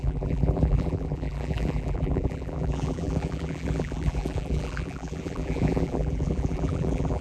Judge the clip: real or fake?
fake